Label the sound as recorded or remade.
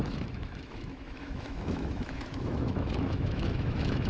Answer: remade